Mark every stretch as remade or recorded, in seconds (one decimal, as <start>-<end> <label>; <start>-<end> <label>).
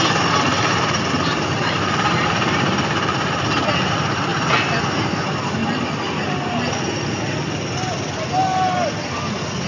0.0-0.5 recorded; 0.5-3.7 remade; 3.7-5.6 recorded; 5.6-6.4 remade; 6.4-9.7 recorded